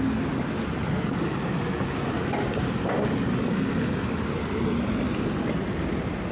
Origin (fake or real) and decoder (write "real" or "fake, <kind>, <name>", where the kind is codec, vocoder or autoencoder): real